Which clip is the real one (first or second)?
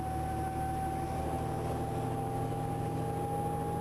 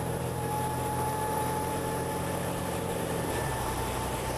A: first